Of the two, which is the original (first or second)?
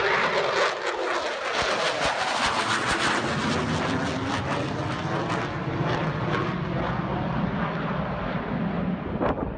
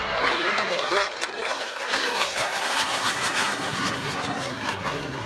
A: first